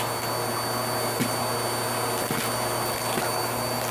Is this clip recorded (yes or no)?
yes